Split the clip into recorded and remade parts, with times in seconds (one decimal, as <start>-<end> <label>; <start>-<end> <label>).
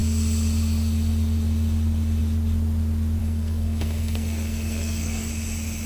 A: 0.0-3.2 recorded; 3.2-5.3 remade; 5.3-5.9 recorded